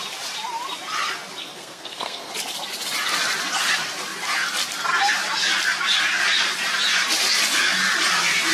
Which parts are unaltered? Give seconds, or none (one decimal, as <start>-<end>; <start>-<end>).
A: 0.0-1.4; 2.3-8.5